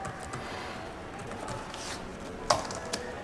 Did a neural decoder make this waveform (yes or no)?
no